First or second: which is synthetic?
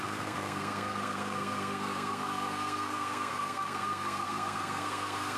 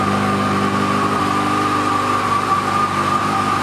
first